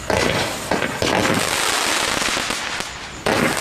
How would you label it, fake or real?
real